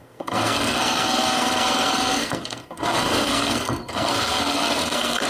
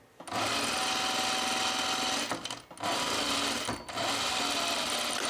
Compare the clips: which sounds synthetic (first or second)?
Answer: first